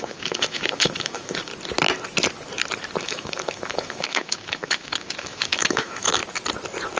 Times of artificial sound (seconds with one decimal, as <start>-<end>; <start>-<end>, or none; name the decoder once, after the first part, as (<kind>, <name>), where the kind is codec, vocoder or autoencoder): 0.0-1.5 (autoencoder, DAC-VAE); 3.0-6.2